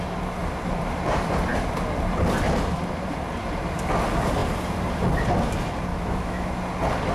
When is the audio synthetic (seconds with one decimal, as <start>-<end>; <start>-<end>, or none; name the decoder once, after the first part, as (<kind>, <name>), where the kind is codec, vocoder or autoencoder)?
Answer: 5.9-6.5 (autoencoder, DAC-VAE)